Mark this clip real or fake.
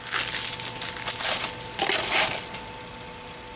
real